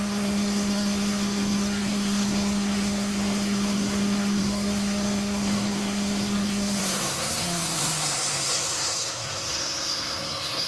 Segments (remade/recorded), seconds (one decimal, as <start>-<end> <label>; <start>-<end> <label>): 0.0-10.7 remade